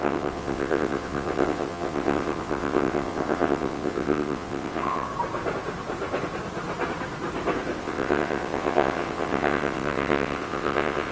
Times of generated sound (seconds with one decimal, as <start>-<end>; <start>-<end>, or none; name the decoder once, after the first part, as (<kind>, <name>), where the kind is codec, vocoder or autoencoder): 0.0-5.1 (vocoder, WaveNeXt); 7.8-11.1